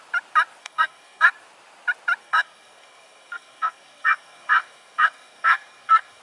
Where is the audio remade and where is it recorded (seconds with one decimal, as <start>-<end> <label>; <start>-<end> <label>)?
0.0-0.6 recorded; 0.6-1.3 remade; 1.3-2.2 recorded; 2.2-6.2 remade